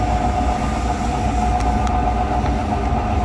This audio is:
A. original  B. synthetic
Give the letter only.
A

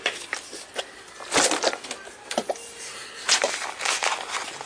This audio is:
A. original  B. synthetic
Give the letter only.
A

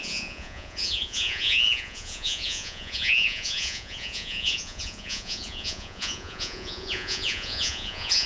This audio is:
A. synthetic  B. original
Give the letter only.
A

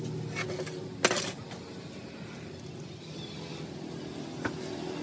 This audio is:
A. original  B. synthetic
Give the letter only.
A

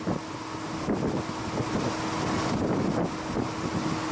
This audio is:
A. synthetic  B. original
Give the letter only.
B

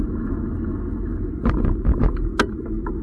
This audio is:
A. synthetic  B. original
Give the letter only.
B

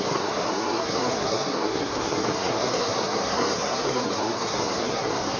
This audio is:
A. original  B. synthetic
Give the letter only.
B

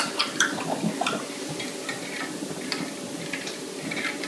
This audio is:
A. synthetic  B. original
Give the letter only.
A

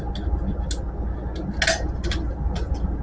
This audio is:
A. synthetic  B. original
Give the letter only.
B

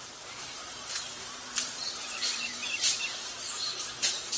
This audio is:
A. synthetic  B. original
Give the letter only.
A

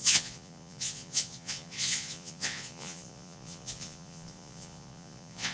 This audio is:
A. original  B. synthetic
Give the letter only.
B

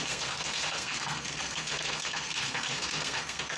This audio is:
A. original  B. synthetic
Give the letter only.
B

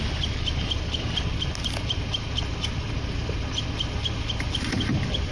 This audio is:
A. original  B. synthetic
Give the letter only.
A